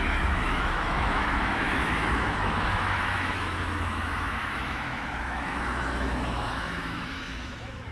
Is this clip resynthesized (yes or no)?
yes